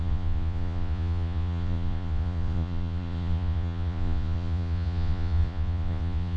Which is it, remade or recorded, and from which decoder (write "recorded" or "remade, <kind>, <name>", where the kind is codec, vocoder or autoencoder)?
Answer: remade, vocoder, Vocos